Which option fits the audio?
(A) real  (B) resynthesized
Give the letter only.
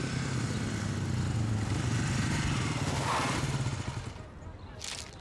A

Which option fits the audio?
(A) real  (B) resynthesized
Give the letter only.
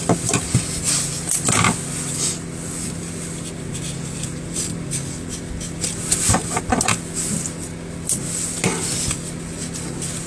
A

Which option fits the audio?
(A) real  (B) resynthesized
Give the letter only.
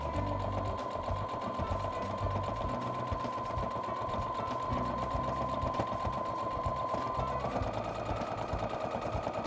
A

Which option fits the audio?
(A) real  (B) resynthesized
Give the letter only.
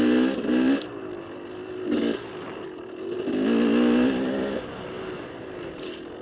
A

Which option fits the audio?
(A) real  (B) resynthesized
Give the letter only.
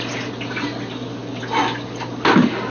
A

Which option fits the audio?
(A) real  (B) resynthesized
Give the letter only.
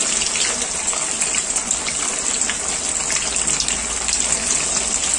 A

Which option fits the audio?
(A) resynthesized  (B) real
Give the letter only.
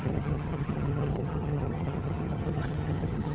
A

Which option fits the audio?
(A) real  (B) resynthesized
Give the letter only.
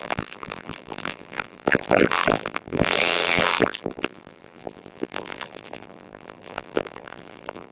B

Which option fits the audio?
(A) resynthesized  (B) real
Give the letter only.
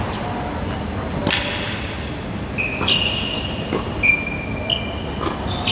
B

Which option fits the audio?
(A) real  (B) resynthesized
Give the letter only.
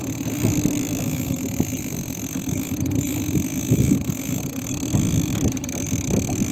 A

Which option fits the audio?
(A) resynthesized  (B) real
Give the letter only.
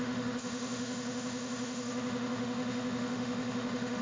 A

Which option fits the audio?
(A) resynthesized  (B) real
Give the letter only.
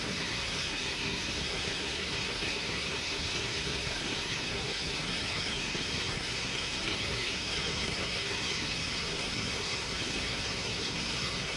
A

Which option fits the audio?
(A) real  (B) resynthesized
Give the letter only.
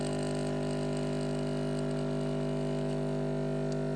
A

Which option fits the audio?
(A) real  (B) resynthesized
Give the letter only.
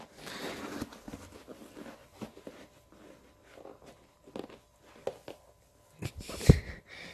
A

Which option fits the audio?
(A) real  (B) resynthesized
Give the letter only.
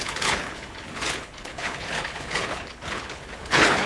B